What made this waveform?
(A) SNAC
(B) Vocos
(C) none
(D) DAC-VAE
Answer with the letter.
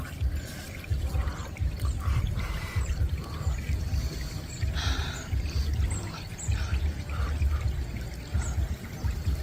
C